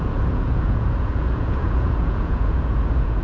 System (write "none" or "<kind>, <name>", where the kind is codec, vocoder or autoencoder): vocoder, Vocos